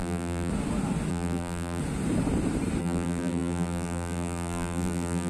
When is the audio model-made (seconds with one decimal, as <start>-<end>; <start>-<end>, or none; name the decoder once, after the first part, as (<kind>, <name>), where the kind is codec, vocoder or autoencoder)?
0.0-0.5 (vocoder, BigVGAN v2); 1.1-1.8; 2.8-5.3